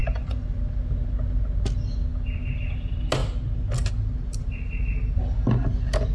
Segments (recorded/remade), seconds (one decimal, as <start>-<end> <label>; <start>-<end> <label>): 0.0-0.6 remade; 0.6-6.1 recorded